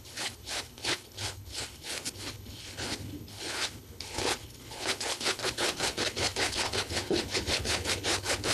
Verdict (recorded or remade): remade